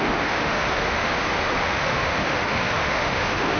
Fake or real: fake